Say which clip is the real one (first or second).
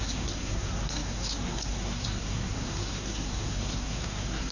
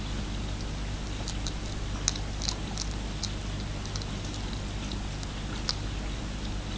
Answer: second